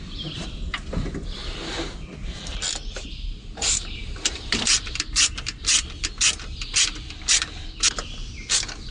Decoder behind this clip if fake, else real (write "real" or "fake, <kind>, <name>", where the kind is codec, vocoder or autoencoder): fake, vocoder, BigVGAN v2